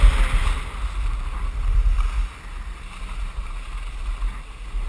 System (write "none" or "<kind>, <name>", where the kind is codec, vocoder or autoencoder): none